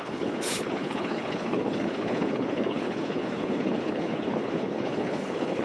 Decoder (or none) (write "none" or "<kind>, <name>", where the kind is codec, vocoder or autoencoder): codec, HILCodec